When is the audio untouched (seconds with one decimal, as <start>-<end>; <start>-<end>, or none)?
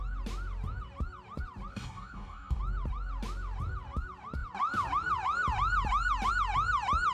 0.0-1.7; 2.6-7.1